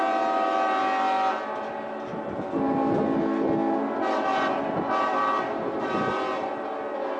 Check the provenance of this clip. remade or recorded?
recorded